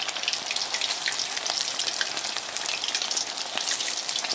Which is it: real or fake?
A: real